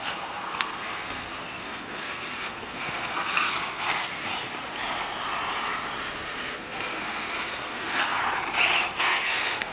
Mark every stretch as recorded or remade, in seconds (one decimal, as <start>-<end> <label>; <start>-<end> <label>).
0.0-4.3 remade; 4.3-6.1 recorded; 6.1-8.2 remade; 8.2-9.0 recorded; 9.0-9.7 remade